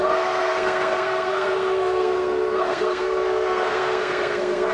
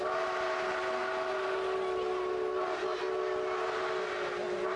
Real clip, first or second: second